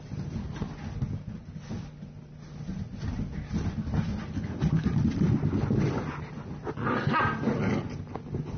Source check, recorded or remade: recorded